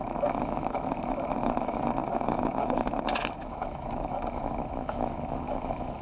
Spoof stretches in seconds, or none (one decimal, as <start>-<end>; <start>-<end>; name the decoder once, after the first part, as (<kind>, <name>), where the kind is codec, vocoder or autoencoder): 0.0-6.0 (autoencoder, DAC-VAE)